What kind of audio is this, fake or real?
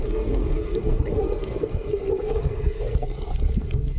fake